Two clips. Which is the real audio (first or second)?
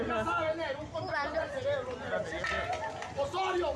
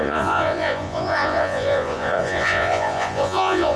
first